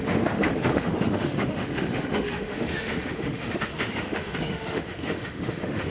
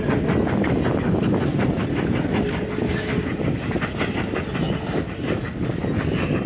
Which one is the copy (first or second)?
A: first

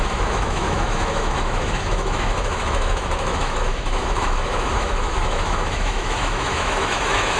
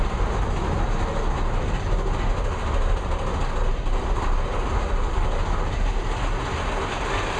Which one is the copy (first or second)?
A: first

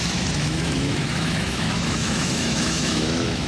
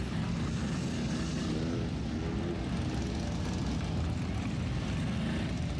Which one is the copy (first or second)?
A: first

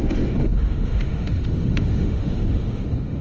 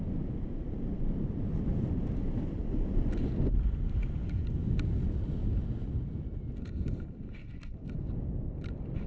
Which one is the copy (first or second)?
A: first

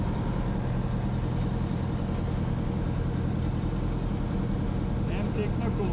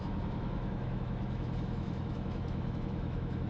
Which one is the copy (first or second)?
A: second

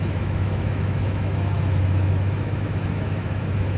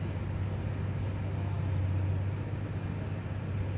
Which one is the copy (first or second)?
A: first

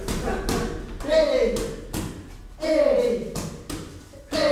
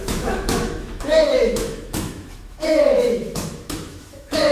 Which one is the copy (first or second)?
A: second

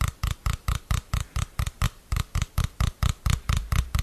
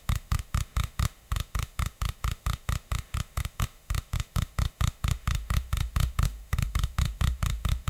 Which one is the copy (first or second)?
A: second